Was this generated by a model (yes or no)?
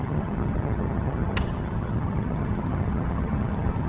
yes